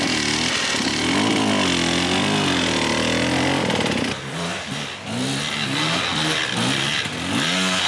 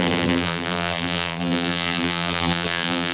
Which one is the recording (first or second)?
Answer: first